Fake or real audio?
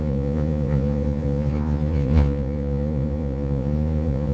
fake